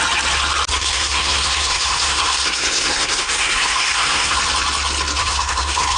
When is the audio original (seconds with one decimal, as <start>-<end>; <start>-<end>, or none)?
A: 0.0-0.8; 4.4-5.2